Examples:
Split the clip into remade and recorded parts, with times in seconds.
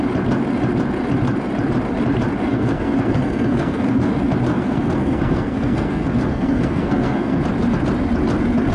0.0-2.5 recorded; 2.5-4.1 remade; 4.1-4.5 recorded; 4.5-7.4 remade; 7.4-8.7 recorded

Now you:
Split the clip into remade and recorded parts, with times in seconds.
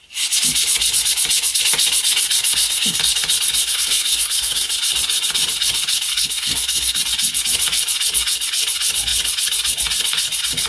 0.0-2.5 recorded; 2.5-3.0 remade; 3.0-3.6 recorded; 3.6-4.8 remade; 4.8-6.1 recorded; 6.1-7.0 remade; 7.0-10.7 recorded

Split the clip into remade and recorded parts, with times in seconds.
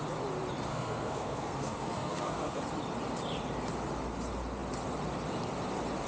0.0-0.7 recorded; 0.7-2.6 remade; 2.6-6.1 recorded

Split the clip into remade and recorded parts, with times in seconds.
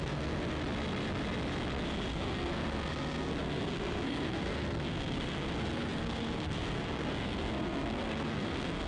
0.0-0.6 remade; 0.6-2.1 recorded; 2.1-8.9 remade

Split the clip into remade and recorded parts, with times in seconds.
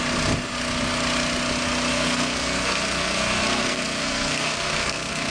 0.0-1.9 recorded; 1.9-5.3 remade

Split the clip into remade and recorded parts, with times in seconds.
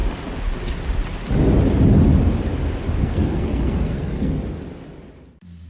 0.0-3.0 recorded; 3.0-4.4 remade; 4.4-5.7 recorded